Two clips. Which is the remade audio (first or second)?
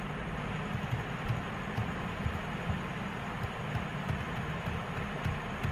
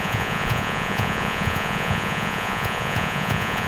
second